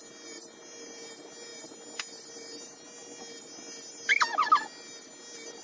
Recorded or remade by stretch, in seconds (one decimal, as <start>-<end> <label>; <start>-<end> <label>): 0.0-5.6 recorded